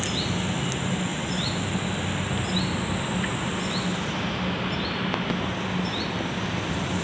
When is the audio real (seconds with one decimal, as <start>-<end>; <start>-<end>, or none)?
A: 0.0-7.0